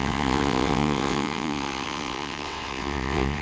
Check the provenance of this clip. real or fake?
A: fake